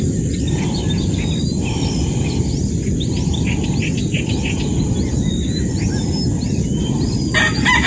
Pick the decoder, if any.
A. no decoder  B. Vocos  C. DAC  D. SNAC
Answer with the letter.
A